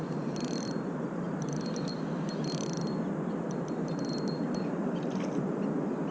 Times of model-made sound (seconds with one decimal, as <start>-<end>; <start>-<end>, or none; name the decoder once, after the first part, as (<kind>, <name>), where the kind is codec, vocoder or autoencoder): 0.0-1.9 (vocoder, BigVGAN v2); 3.1-6.1